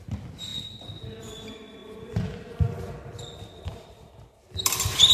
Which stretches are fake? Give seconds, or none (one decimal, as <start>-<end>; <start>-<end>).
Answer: none